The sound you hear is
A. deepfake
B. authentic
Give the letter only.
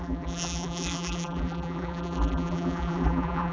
A